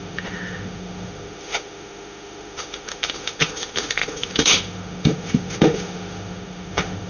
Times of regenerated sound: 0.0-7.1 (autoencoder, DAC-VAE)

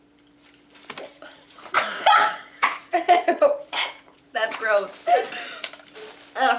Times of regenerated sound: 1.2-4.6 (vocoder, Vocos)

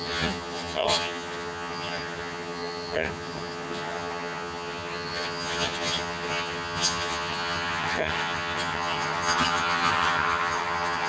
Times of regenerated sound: 0.0-11.1 (vocoder, HiFi-GAN)

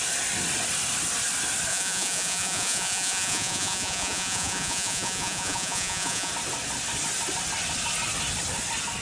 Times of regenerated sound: 1.7-6.3 (vocoder, Vocos)

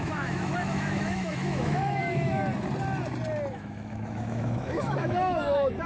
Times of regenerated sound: 0.0-2.4 (autoencoder, DAC-VAE); 3.5-5.9